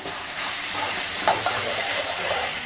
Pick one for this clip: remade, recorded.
remade